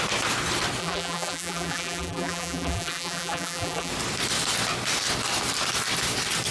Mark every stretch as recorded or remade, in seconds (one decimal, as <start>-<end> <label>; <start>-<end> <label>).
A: 0.0-0.8 recorded; 0.8-3.9 remade; 3.9-6.5 recorded